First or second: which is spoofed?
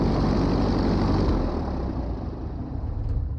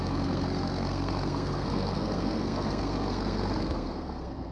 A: second